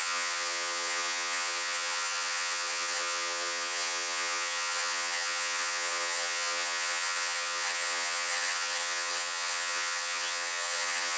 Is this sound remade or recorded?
remade